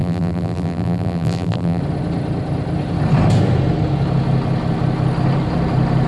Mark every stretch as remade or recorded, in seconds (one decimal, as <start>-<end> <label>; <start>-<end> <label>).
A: 0.0-1.8 remade; 1.8-6.1 recorded